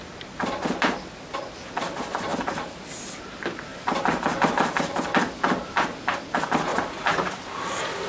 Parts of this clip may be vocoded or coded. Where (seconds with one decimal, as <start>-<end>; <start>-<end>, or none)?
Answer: 3.7-4.5; 6.7-8.1